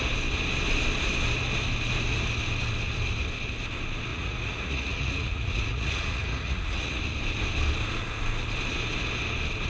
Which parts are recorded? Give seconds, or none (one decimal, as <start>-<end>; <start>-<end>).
0.0-4.1; 7.0-9.7